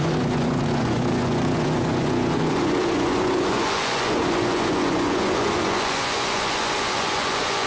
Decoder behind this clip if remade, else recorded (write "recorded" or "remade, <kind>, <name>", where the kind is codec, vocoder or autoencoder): remade, vocoder, Vocos